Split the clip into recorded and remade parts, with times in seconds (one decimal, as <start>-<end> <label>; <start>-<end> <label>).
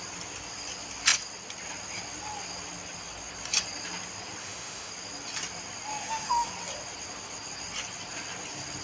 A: 0.0-4.4 recorded; 4.4-4.9 remade; 4.9-5.9 recorded; 5.9-6.5 remade; 6.5-8.8 recorded